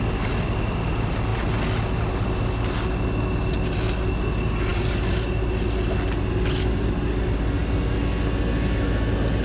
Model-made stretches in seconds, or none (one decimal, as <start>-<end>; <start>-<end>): none